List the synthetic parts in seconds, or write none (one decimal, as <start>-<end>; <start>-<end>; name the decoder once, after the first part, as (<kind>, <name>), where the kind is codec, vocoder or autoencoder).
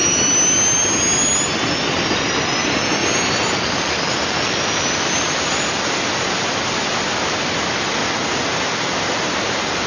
none